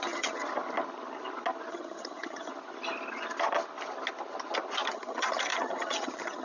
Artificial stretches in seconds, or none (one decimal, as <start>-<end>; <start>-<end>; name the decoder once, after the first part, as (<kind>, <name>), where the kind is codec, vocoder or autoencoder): 0.0-0.4 (vocoder, HiFi-GAN); 1.7-2.5; 4.9-6.4